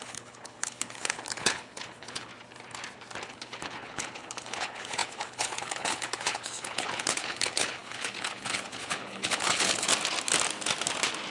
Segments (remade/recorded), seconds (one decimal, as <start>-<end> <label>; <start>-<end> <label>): 0.0-2.3 remade; 2.3-3.3 recorded; 3.3-9.9 remade; 9.9-11.3 recorded